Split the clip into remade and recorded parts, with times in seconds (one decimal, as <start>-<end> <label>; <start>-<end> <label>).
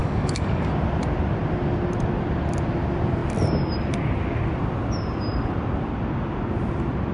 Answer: 0.0-0.7 remade; 0.7-7.1 recorded